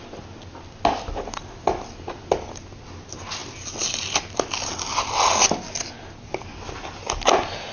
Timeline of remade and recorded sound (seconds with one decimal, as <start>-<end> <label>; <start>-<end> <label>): 0.0-7.7 recorded